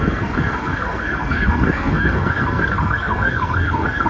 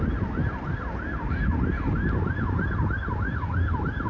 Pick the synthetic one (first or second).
first